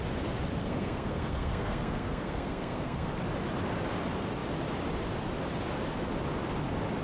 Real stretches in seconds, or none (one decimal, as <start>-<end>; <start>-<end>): 0.0-0.6; 3.1-7.0